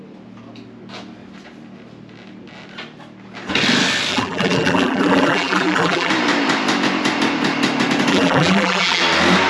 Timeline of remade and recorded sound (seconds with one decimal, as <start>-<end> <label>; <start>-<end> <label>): 0.0-4.1 recorded; 4.1-6.1 remade; 6.1-8.1 recorded; 8.1-9.0 remade; 9.0-9.5 recorded